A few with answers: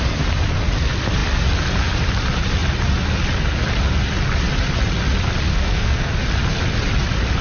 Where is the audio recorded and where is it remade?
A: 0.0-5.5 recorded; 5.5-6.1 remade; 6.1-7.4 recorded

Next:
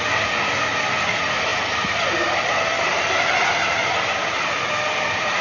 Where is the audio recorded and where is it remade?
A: 0.0-5.4 recorded